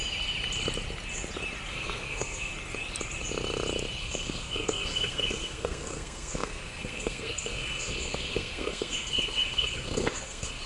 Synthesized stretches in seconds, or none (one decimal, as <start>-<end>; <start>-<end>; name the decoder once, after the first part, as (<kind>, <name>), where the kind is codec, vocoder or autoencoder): 1.7-2.5 (codec, SNAC); 4.0-10.7